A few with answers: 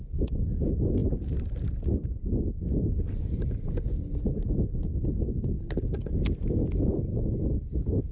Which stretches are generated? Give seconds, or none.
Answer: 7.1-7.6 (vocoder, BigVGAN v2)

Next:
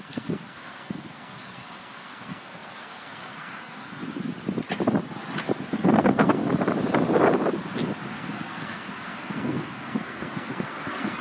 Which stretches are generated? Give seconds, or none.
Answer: 0.0-4.0 (codec, SNAC); 5.7-6.4; 8.1-11.2

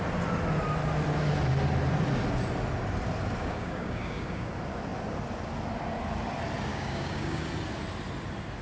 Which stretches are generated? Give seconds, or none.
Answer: 3.4-4.5 (codec, DAC); 6.7-7.4

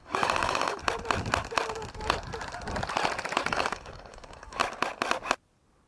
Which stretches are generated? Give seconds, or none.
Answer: 0.0-0.8 (codec, DAC); 3.5-4.6

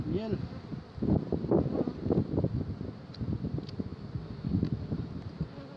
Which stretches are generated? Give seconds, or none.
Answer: none

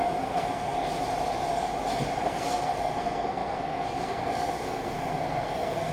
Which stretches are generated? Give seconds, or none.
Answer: 0.0-0.9 (codec, SNAC); 2.2-5.9

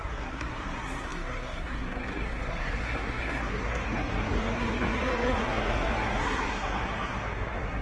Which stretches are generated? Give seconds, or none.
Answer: 0.0-7.8 (codec, SNAC)